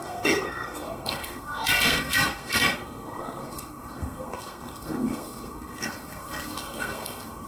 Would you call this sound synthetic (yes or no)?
yes